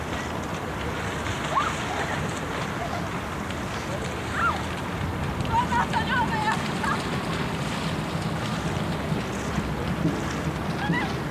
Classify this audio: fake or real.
real